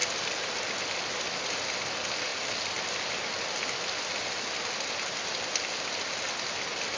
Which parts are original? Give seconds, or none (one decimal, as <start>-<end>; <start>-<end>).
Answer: 1.3-7.0